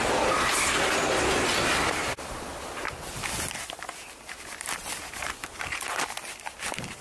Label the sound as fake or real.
real